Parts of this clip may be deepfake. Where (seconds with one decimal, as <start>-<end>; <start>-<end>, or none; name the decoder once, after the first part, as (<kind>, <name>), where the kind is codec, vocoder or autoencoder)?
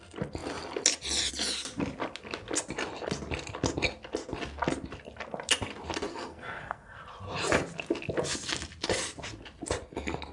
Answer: 6.1-7.0 (codec, SNAC)